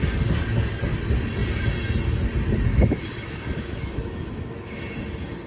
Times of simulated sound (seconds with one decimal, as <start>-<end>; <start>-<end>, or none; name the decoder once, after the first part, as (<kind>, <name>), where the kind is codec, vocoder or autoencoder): 2.7-4.8 (autoencoder, DAC-VAE)